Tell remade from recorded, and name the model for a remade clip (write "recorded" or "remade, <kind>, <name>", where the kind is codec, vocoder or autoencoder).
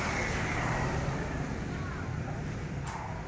remade, vocoder, BigVGAN v2